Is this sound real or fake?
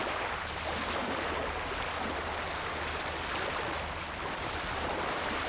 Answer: real